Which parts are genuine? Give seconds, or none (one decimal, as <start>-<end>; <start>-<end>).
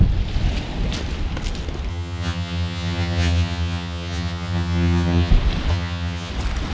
0.0-1.9; 5.3-5.7; 6.3-6.7